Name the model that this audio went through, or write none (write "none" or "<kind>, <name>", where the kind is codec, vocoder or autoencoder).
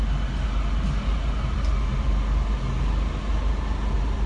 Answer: none